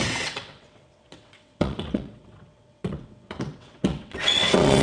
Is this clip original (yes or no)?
no